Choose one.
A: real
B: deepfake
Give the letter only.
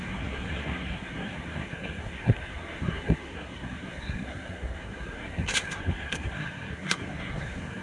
B